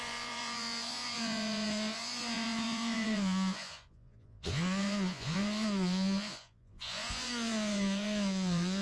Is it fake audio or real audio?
fake